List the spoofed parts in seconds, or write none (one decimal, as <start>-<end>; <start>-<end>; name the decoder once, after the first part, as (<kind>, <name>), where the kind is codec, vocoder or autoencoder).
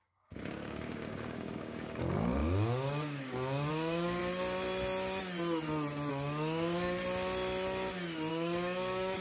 0.0-4.2 (codec, DAC); 6.1-7.0; 8.3-9.2